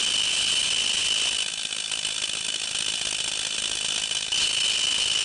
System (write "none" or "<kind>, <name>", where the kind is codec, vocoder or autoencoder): none